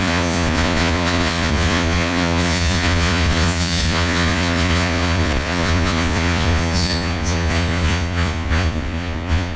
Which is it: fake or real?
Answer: fake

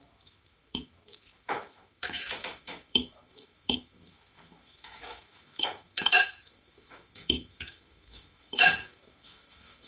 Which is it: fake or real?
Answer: fake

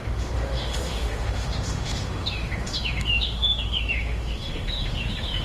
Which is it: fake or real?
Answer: fake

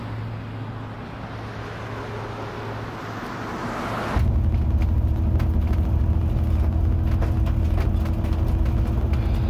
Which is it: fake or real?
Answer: real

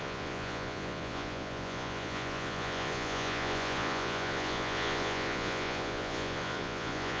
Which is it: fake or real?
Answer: fake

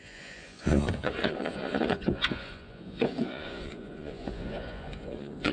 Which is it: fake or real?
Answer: fake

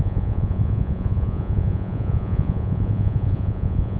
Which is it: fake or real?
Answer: fake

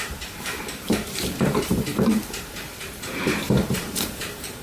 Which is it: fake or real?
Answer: fake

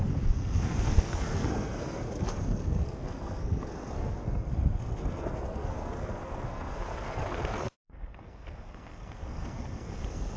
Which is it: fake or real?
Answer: fake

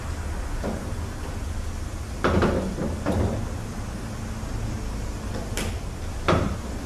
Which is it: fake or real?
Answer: real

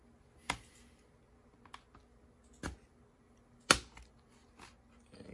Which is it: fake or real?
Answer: real